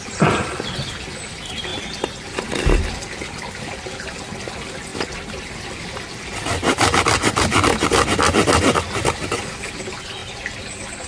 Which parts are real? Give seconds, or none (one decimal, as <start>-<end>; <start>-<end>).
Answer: 0.0-4.9; 5.6-11.1